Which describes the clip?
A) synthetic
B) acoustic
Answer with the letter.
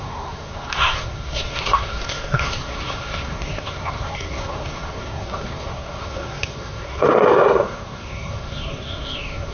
A